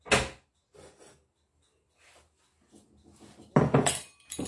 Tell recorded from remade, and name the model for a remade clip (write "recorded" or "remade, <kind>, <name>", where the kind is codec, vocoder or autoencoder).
recorded